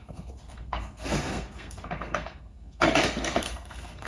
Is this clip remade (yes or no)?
yes